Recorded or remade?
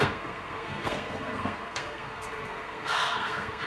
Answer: remade